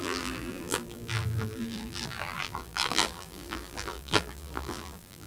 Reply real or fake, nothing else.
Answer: fake